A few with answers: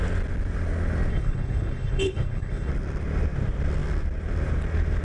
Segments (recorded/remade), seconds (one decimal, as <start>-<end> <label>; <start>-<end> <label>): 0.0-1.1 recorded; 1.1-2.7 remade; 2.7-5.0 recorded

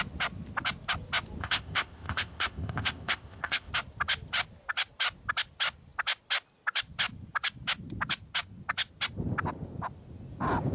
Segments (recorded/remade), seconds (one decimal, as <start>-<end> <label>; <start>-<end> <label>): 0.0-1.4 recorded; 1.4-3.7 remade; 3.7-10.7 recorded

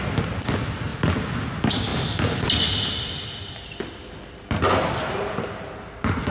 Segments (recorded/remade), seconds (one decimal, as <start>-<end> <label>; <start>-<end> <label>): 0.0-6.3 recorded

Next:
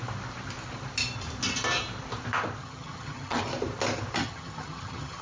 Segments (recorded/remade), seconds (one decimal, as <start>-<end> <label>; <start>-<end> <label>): 0.0-2.6 recorded; 2.6-3.4 remade; 3.4-4.2 recorded; 4.2-5.2 remade

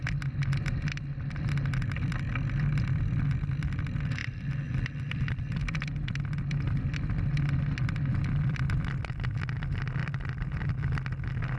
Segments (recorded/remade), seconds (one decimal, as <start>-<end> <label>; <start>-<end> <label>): 0.0-4.2 recorded; 4.2-5.6 remade; 5.6-7.8 recorded; 7.8-9.3 remade; 9.3-10.0 recorded; 10.0-10.6 remade; 10.6-11.6 recorded

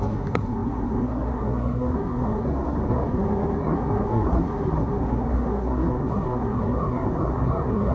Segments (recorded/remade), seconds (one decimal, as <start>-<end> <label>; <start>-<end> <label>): 0.0-7.9 remade